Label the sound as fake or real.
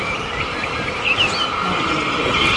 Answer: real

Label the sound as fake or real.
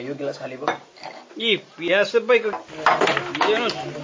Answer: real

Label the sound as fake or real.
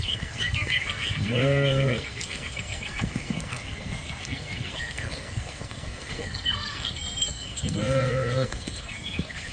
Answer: fake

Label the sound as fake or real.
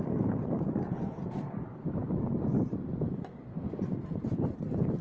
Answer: fake